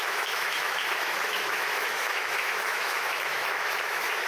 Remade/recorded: remade